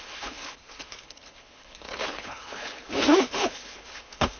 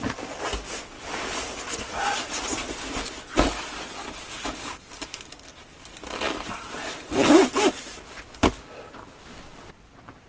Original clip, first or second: second